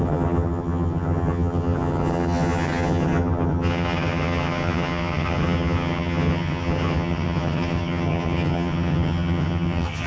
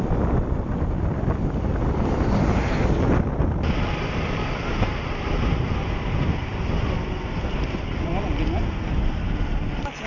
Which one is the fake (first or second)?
first